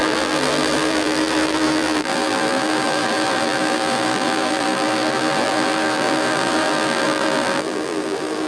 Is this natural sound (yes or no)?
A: no